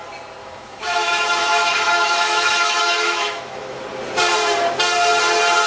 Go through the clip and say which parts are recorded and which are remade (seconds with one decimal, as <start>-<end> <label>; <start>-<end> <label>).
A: 0.0-0.4 recorded; 0.4-3.8 remade; 3.8-5.7 recorded